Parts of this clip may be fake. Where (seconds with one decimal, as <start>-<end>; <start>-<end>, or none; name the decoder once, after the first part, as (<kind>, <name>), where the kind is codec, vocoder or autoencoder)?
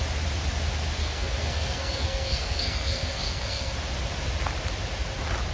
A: 1.0-3.7 (codec, SNAC)